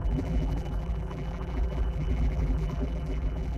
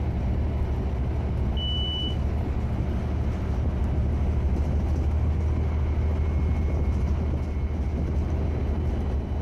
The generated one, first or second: first